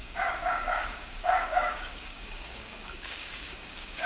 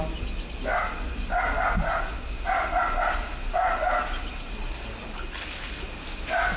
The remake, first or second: first